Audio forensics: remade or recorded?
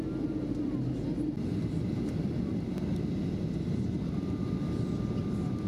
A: recorded